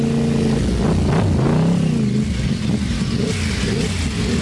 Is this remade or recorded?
recorded